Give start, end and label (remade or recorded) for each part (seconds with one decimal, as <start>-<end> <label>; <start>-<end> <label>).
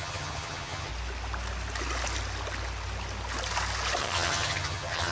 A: 0.0-0.9 remade; 0.9-4.0 recorded; 4.0-5.1 remade